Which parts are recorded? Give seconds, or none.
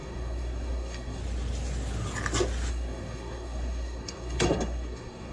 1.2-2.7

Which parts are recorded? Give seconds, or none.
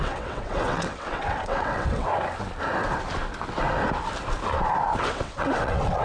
2.1-5.0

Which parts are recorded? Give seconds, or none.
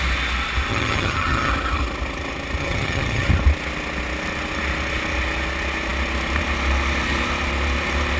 0.0-0.7; 1.5-2.6; 3.3-8.2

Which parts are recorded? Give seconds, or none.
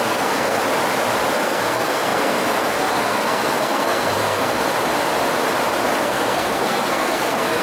0.6-1.3; 4.6-6.0